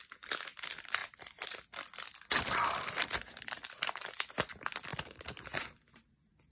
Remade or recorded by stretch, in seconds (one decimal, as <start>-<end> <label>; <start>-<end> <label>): 0.0-1.0 recorded; 1.0-1.6 remade; 1.6-4.9 recorded; 4.9-6.1 remade; 6.1-6.5 recorded